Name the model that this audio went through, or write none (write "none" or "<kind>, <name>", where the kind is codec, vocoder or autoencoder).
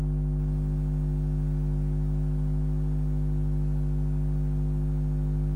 none